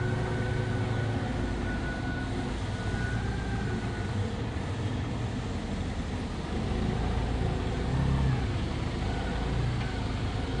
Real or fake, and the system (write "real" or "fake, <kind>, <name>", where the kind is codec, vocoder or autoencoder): real